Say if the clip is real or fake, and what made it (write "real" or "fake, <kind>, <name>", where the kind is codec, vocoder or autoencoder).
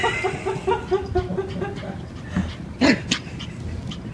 real